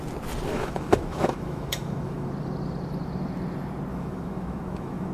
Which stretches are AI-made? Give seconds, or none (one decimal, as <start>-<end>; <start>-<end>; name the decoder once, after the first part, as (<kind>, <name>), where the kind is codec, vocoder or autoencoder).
0.5-2.3 (autoencoder, DAC-VAE); 3.9-5.1